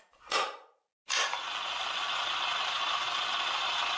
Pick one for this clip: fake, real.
real